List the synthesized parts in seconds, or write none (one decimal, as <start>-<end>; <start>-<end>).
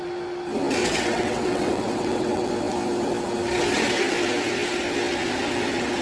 0.8-2.5